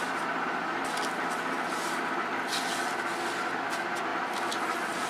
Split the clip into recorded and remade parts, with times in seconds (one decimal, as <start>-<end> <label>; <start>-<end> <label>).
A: 0.0-5.1 recorded